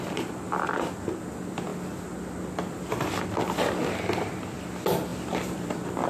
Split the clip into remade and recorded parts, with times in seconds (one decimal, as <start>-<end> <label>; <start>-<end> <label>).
0.0-5.1 recorded; 5.1-6.1 remade